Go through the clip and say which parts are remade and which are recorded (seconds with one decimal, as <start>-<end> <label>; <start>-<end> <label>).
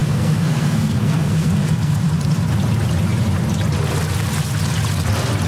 0.0-2.0 remade; 2.0-5.5 recorded